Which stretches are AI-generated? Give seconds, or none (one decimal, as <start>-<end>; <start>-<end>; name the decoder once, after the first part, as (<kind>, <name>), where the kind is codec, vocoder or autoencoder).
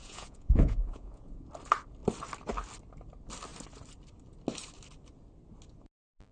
0.0-1.5 (vocoder, Vocos)